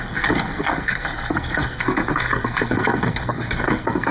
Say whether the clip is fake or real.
fake